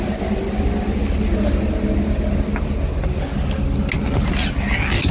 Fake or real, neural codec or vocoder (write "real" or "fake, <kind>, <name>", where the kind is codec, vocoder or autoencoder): real